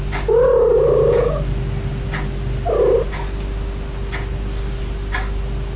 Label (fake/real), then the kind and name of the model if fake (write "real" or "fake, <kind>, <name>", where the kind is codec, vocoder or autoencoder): real